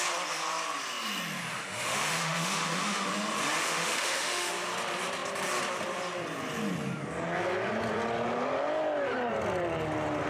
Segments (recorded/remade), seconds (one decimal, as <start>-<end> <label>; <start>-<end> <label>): 0.0-1.5 recorded; 1.5-3.1 remade; 3.1-3.6 recorded; 3.6-4.5 remade; 4.5-10.3 recorded